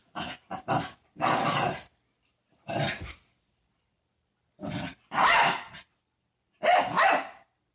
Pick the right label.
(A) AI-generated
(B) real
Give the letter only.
A